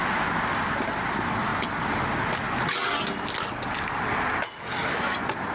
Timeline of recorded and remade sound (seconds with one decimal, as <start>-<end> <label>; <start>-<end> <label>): 0.0-5.5 recorded